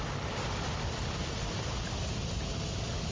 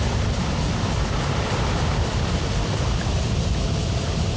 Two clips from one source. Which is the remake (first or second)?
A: second